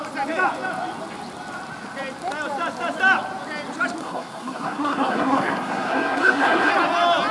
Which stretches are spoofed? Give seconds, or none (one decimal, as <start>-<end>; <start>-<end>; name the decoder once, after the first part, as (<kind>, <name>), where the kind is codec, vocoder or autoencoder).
4.0-6.7 (codec, SNAC)